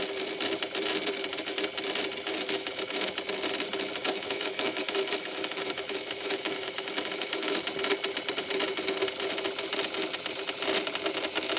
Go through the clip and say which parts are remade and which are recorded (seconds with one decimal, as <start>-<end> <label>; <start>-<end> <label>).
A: 0.0-2.3 recorded; 2.3-3.1 remade; 3.1-4.0 recorded; 4.0-7.6 remade; 7.6-11.6 recorded